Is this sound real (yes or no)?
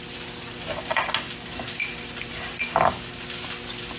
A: yes